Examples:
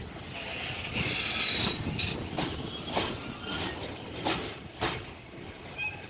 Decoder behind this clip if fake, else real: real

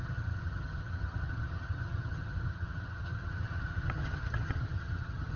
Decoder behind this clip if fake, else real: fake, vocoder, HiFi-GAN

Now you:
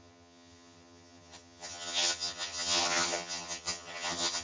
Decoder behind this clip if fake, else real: fake, vocoder, HiFi-GAN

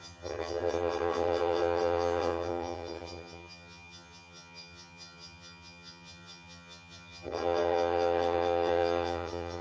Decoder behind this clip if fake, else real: fake, vocoder, HiFi-GAN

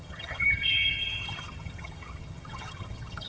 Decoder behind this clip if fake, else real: fake, vocoder, HiFi-GAN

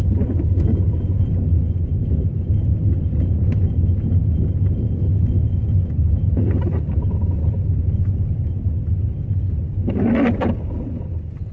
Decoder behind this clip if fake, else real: real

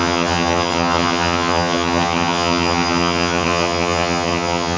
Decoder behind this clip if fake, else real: fake, vocoder, HiFi-GAN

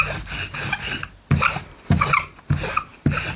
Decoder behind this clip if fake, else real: real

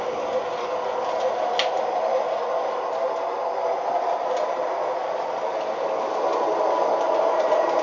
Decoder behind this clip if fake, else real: real